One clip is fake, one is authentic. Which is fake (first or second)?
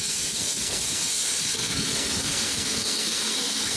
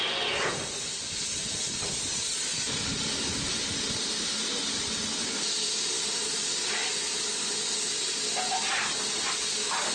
first